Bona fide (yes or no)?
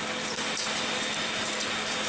yes